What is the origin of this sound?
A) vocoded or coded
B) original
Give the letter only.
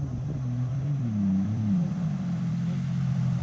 A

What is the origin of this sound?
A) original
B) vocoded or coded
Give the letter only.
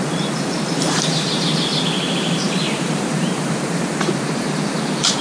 B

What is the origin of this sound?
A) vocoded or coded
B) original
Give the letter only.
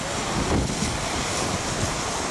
B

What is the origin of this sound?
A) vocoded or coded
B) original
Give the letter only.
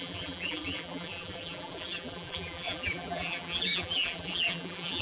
A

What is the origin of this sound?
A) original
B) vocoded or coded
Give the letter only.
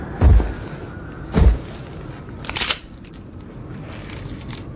A